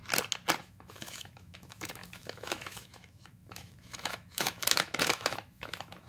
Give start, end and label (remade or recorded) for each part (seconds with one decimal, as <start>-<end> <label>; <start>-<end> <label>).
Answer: 0.0-0.6 recorded; 0.6-6.1 remade

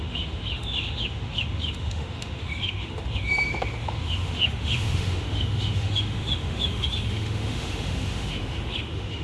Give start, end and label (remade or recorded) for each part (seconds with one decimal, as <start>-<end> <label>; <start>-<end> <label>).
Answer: 0.0-9.2 remade